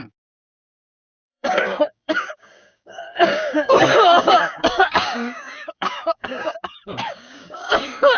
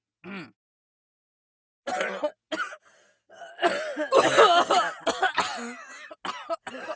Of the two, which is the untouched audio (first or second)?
second